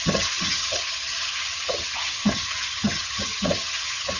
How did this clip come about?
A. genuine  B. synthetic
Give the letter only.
B